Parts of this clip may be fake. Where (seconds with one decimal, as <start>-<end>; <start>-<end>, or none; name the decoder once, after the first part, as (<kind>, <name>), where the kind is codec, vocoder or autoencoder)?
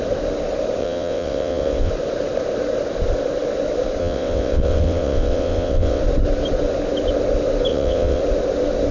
0.8-1.9 (vocoder, WaveNeXt); 4.0-6.0; 7.7-8.2